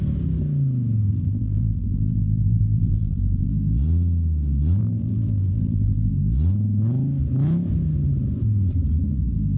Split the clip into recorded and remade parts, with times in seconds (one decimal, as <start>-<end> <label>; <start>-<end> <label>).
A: 0.0-1.1 recorded; 1.1-3.5 remade; 3.5-4.8 recorded; 4.8-6.1 remade; 6.1-9.6 recorded

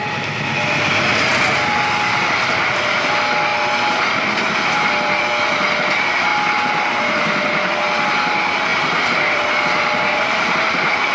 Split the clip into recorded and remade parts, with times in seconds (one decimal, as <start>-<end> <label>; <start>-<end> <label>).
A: 0.0-8.7 recorded; 8.7-10.5 remade; 10.5-11.1 recorded

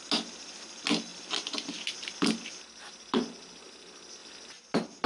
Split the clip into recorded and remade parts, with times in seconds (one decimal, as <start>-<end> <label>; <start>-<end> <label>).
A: 0.0-5.1 recorded

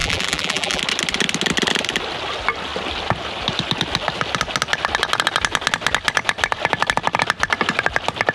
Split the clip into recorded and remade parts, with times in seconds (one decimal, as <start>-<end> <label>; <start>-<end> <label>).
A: 0.0-0.8 remade; 0.8-8.3 recorded

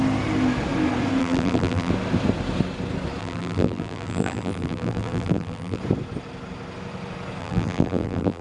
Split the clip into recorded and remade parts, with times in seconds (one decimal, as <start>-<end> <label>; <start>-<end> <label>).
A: 0.0-1.2 recorded; 1.2-1.9 remade; 1.9-3.2 recorded; 3.2-5.8 remade; 5.8-7.4 recorded; 7.4-8.4 remade

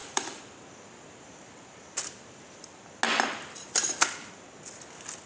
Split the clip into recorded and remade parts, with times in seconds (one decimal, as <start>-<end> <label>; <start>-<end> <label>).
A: 0.0-3.0 remade; 3.0-5.3 recorded

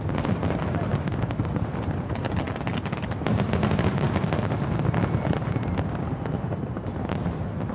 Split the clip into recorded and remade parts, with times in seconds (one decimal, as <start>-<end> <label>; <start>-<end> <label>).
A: 0.0-7.7 recorded